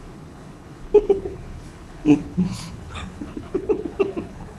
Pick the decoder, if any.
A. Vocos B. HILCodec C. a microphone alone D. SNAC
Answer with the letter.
B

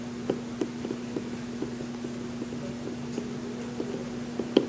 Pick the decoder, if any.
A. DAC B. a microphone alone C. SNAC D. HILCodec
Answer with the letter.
B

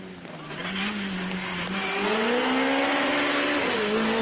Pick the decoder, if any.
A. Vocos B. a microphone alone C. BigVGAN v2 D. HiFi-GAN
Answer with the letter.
B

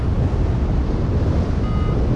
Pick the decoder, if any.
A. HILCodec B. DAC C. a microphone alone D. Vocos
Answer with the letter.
C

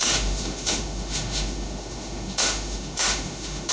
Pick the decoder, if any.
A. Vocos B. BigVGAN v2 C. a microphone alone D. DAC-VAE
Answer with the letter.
D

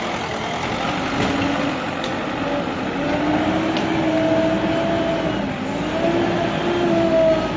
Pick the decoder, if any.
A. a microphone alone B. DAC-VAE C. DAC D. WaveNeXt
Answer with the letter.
A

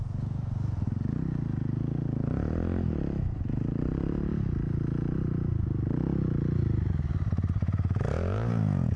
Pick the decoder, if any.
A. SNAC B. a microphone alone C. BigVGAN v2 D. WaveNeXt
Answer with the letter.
B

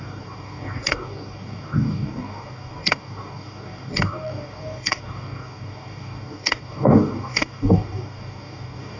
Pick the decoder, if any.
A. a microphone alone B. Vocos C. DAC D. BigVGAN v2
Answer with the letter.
C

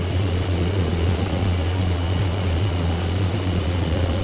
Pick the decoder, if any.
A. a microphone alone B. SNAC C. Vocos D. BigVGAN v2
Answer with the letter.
C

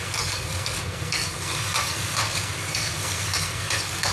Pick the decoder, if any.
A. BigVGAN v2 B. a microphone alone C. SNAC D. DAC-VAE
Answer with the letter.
C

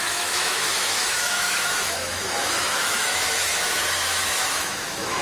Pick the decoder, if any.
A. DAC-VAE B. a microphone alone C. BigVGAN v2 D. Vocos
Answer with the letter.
A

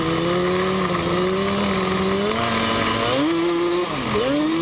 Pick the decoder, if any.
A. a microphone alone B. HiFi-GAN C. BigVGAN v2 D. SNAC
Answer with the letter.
A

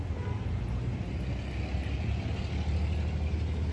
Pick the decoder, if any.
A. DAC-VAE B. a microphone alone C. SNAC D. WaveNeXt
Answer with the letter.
B